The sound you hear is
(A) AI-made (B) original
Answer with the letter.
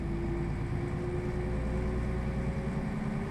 B